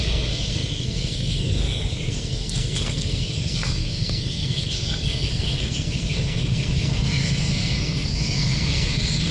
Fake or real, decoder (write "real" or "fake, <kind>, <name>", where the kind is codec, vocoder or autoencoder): fake, codec, SNAC